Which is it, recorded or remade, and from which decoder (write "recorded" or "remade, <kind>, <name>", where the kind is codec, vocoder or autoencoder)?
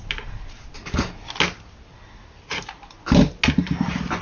recorded